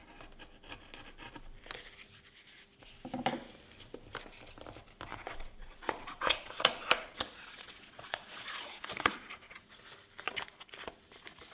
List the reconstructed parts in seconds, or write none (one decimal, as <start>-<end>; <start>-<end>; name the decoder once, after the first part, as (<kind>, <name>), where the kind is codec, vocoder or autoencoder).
5.1-9.8 (vocoder, Vocos)